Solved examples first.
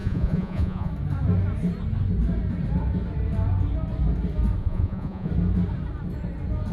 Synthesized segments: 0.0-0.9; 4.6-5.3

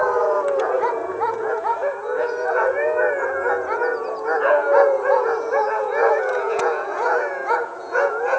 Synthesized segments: 0.0-8.4

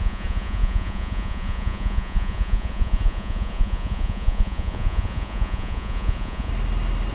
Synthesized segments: 0.0-6.5

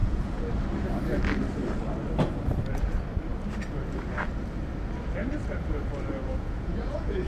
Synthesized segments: 0.0-0.5; 6.2-7.3

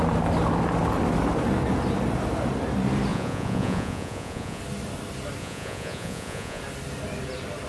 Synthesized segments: 3.1-4.6; 5.4-6.6

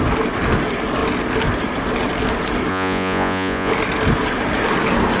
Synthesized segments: 2.7-3.7

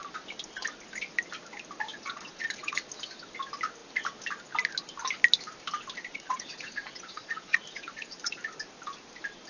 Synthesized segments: 1.9-2.9; 6.1-8.4

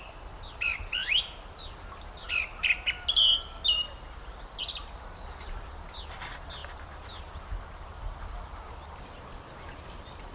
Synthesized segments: none